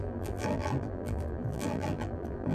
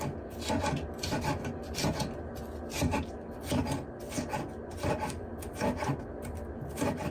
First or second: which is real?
second